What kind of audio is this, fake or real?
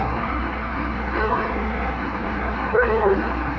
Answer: fake